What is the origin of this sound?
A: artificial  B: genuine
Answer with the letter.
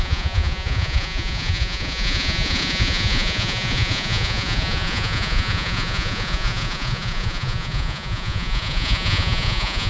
A